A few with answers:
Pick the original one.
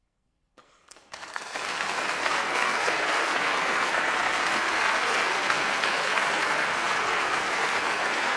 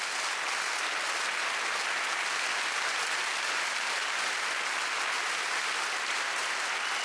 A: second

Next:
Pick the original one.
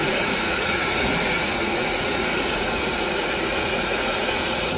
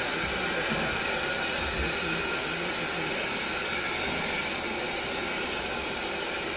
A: second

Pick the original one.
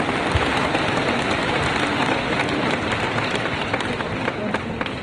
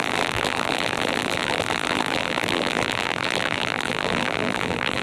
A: first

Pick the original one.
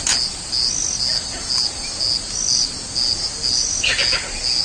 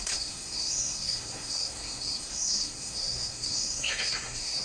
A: first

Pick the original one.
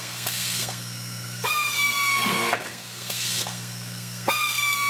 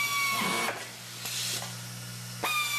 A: second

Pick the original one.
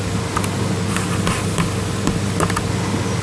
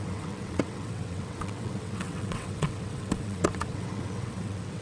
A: first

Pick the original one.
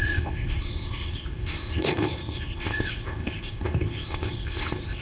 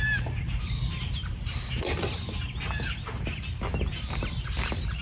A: second